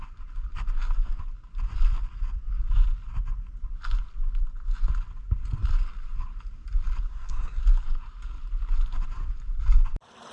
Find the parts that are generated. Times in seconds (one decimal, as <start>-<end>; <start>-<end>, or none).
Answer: 7.1-7.6